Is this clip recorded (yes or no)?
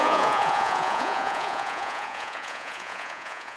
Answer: no